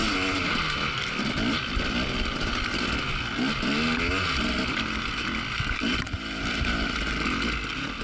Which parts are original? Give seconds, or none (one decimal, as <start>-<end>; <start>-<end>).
0.0-5.9; 7.0-8.0